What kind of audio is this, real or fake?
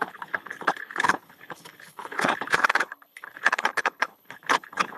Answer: fake